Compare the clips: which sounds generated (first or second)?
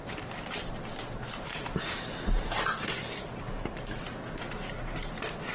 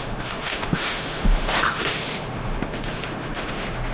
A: second